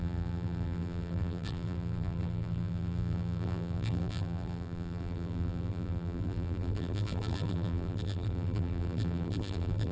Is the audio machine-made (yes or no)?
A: yes